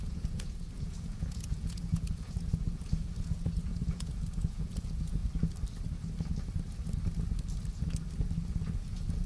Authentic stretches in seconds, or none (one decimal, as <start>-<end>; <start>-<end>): 5.2-8.5